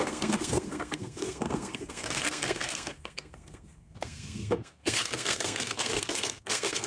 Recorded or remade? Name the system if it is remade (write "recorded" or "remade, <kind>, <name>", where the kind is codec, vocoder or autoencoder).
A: remade, codec, SNAC